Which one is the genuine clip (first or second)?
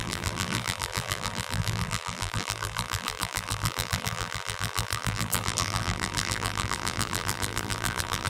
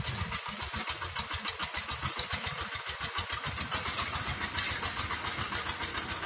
second